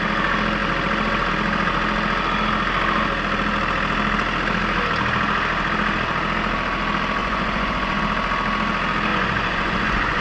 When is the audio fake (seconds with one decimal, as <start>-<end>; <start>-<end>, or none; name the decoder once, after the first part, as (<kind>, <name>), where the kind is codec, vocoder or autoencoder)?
7.2-8.0 (vocoder, Vocos); 9.1-10.2